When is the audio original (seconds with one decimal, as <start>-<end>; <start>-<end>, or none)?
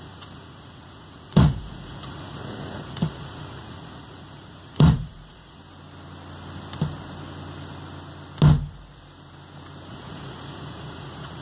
5.6-9.9